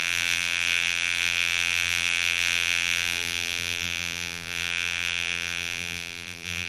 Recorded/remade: remade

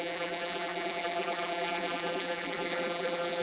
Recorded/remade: remade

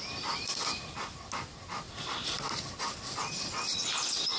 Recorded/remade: recorded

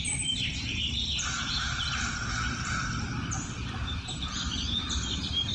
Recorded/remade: remade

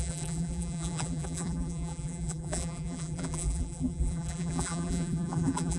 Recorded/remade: remade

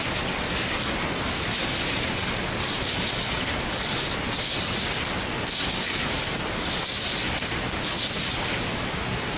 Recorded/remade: recorded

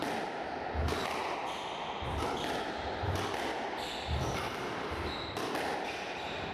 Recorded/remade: recorded